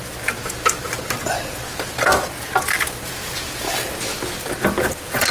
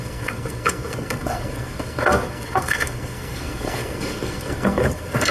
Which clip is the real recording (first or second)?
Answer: first